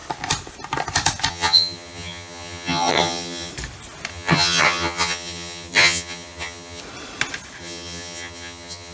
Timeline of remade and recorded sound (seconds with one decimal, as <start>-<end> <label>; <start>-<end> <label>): 0.0-1.3 recorded; 1.3-3.5 remade; 3.5-4.1 recorded; 4.1-6.8 remade; 6.8-7.6 recorded; 7.6-8.9 remade